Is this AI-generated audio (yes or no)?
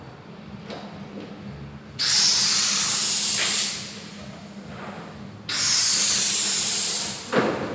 no